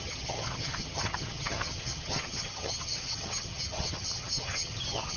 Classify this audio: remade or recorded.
remade